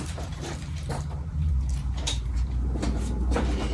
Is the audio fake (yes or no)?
yes